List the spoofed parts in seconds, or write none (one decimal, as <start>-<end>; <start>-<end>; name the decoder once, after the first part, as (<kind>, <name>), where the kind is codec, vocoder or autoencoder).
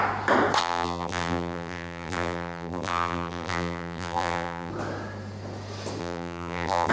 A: 0.6-4.7 (vocoder, BigVGAN v2); 6.0-6.9